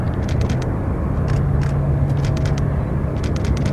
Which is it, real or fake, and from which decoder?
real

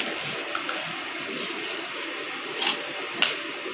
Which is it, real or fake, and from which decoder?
real